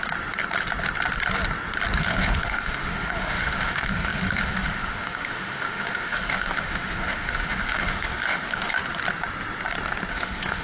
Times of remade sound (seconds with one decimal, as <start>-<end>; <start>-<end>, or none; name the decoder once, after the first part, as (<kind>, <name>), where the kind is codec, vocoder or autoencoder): 2.0-8.8 (autoencoder, DAC-VAE); 10.1-10.6